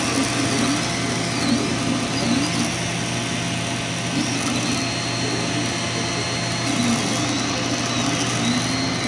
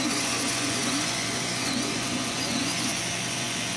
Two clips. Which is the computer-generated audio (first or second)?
second